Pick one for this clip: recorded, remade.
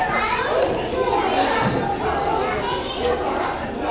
recorded